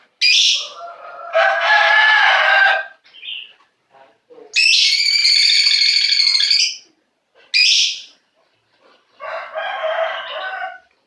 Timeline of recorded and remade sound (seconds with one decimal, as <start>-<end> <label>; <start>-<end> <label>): 0.0-1.3 recorded; 1.3-1.9 remade; 1.9-11.1 recorded